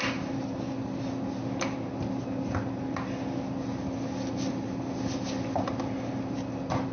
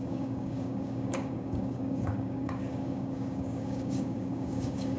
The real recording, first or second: first